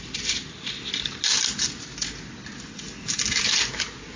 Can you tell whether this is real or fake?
real